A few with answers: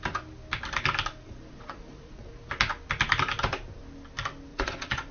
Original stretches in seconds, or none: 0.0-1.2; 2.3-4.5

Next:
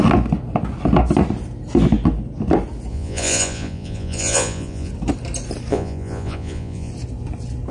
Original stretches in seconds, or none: 0.0-2.9; 4.9-5.7; 6.9-7.7